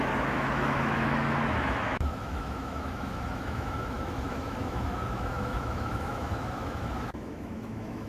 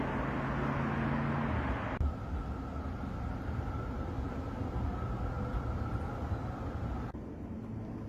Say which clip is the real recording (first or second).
second